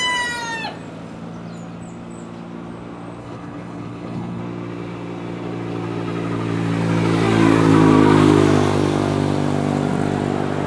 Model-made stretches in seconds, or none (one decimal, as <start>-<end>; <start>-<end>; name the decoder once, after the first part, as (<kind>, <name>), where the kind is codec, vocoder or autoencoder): 3.2-4.4 (codec, HILCodec)